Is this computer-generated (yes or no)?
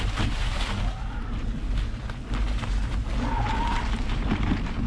no